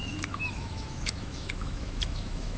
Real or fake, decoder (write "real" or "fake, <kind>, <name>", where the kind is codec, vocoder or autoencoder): fake, autoencoder, DAC-VAE